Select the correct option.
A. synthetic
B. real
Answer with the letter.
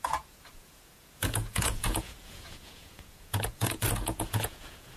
A